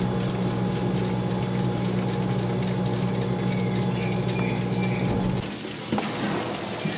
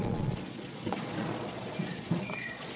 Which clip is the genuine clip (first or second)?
first